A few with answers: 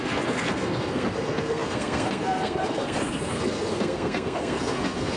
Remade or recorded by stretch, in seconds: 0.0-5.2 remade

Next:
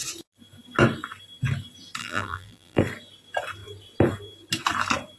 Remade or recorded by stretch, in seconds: 0.0-2.0 recorded; 2.0-2.8 remade; 2.8-5.2 recorded

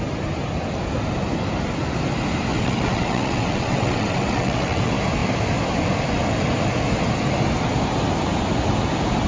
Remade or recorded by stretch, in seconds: 0.0-2.5 recorded; 2.5-4.8 remade; 4.8-9.3 recorded

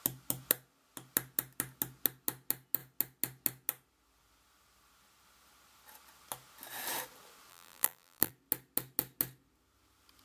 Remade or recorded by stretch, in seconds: 0.0-7.5 recorded; 7.5-8.3 remade; 8.3-10.2 recorded

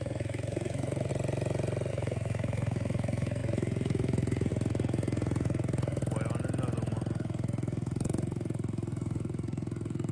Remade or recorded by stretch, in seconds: 0.0-1.1 remade; 1.1-1.9 recorded; 1.9-6.0 remade; 6.0-7.1 recorded; 7.1-10.1 remade

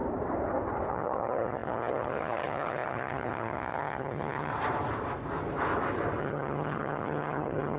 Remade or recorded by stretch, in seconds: 0.0-0.9 recorded; 0.9-4.5 remade; 4.5-6.2 recorded; 6.2-7.8 remade